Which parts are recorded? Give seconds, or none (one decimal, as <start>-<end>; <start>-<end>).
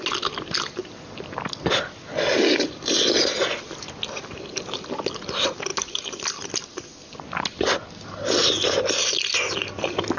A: 0.0-10.2